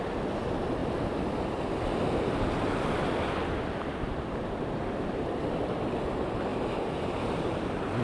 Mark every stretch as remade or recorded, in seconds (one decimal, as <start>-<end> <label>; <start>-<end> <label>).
0.0-6.5 recorded; 6.5-7.6 remade; 7.6-8.0 recorded